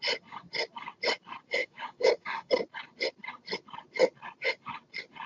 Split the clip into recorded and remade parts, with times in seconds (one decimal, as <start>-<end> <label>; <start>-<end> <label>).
0.0-1.6 recorded; 1.6-2.5 remade; 2.5-5.3 recorded